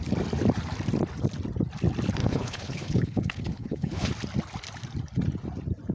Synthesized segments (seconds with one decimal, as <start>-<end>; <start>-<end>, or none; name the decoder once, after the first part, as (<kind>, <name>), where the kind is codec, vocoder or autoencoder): 2.2-4.1 (codec, HILCodec)